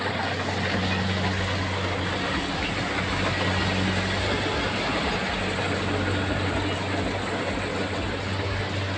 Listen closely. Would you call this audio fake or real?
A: real